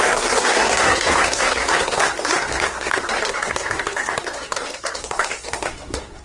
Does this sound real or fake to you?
fake